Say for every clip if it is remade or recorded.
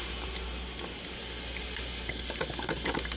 recorded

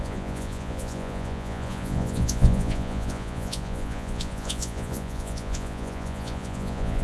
remade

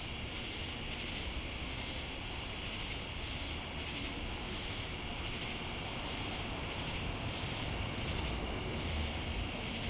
recorded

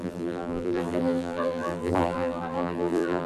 remade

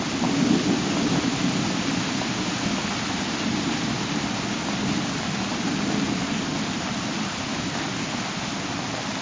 recorded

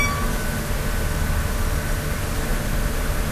recorded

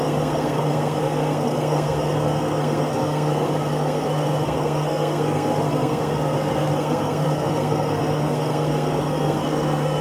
remade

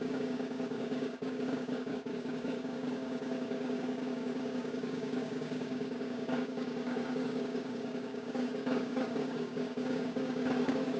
remade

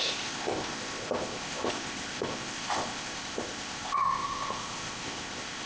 remade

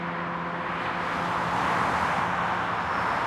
recorded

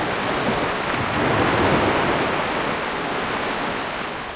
recorded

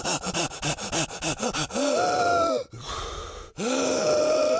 recorded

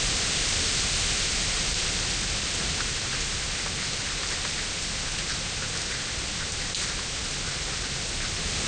recorded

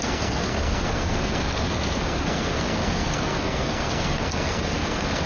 remade